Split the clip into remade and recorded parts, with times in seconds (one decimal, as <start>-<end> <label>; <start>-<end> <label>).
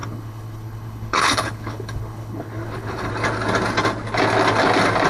0.0-3.1 remade; 3.1-5.1 recorded